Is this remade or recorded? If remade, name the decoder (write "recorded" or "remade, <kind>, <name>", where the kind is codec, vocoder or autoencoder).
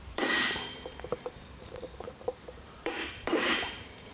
remade, vocoder, BigVGAN v2